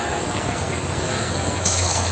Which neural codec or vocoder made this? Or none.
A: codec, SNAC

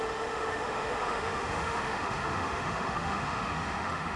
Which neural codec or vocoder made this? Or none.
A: autoencoder, DAC-VAE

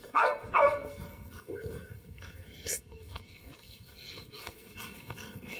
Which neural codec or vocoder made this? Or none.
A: codec, SNAC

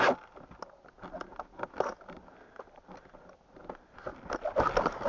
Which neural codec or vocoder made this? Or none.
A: none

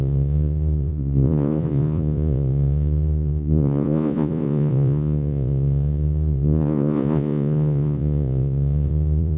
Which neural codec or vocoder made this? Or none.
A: vocoder, Vocos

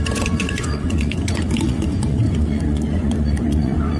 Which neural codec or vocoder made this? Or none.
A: vocoder, Vocos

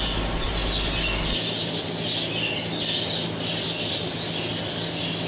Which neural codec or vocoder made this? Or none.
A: none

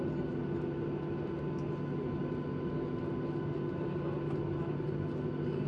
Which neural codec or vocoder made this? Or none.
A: none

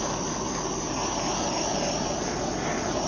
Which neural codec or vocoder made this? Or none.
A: none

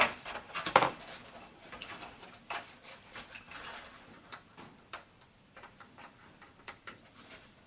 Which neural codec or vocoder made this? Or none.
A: vocoder, BigVGAN v2